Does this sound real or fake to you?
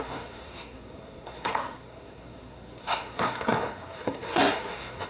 fake